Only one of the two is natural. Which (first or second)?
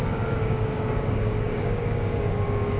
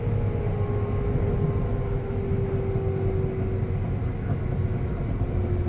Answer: second